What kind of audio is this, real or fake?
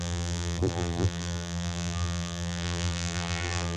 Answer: fake